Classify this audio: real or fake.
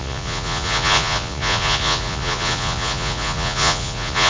fake